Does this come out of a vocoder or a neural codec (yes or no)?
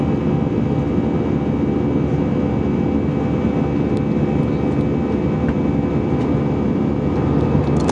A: no